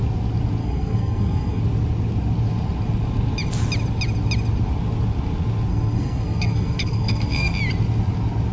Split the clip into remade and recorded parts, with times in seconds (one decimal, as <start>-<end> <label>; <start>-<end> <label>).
0.0-0.6 recorded; 0.6-1.6 remade; 1.6-5.7 recorded; 5.7-7.5 remade; 7.5-8.5 recorded